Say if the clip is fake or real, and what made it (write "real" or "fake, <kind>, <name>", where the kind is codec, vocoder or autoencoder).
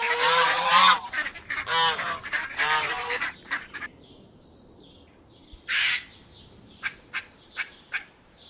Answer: fake, vocoder, BigVGAN v2